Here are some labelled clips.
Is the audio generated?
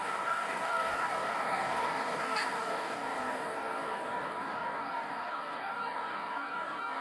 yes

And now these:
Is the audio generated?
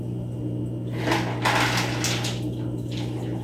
no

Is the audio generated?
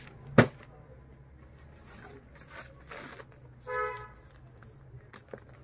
no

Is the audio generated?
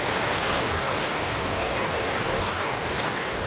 yes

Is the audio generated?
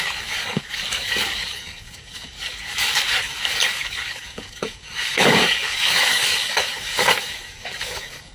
yes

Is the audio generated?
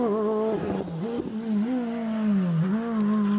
no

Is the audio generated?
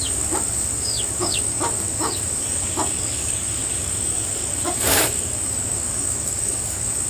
yes